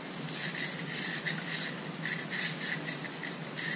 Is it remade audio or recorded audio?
recorded